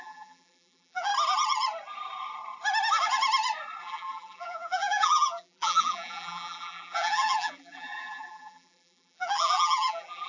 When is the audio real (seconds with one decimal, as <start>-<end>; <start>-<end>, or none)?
1.1-3.8

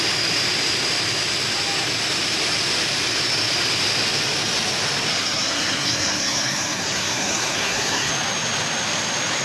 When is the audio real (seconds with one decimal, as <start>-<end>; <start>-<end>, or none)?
0.0-5.1; 8.1-9.4

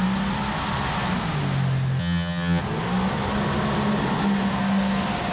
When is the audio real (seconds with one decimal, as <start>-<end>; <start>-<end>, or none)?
0.0-2.0; 2.6-5.3

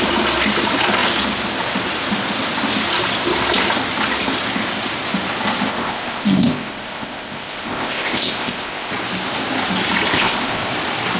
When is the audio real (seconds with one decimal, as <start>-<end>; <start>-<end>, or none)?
0.0-5.7; 8.9-10.1; 10.7-11.2

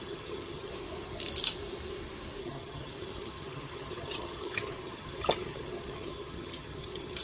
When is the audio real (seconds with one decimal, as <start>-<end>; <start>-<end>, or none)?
0.7-2.4